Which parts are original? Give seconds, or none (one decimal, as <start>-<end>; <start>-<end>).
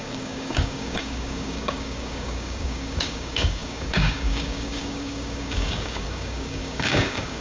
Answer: none